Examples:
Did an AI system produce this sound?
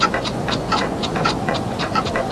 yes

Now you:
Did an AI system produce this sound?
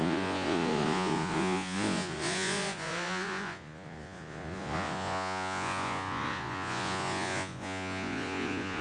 yes